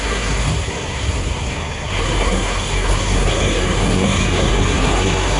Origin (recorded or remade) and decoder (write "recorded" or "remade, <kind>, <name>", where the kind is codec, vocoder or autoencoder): remade, codec, SNAC